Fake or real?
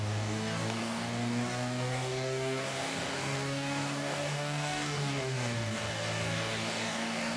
fake